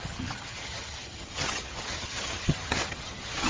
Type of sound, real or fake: fake